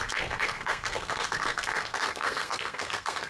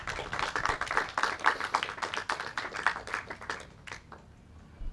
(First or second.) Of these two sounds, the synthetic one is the first